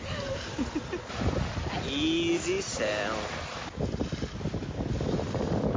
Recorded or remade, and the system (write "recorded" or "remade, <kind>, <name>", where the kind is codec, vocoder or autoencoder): recorded